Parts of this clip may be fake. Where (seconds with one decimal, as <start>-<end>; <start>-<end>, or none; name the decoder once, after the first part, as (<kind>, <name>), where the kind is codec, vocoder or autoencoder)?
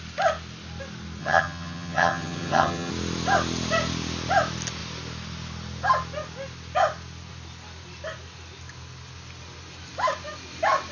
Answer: 1.2-2.9 (vocoder, HiFi-GAN)